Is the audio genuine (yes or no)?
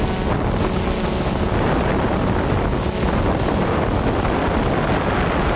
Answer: yes